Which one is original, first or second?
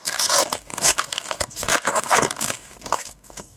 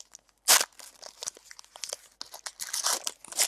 second